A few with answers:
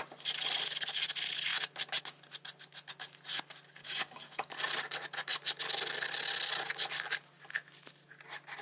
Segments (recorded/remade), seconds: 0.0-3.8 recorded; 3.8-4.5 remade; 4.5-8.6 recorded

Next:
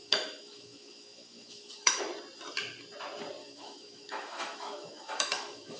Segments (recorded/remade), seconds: 0.0-2.0 remade; 2.0-3.4 recorded; 3.4-5.8 remade

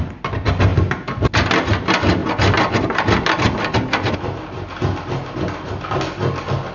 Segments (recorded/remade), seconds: 0.0-6.7 recorded